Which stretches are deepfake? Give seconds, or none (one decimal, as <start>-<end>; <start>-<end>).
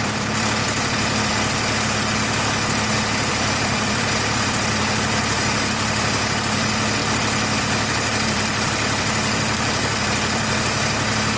0.0-1.3; 3.3-7.0; 7.6-11.4